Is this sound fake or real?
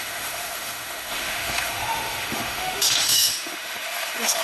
fake